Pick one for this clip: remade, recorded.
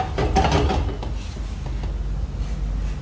recorded